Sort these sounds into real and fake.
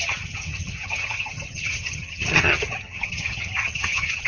fake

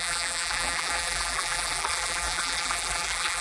fake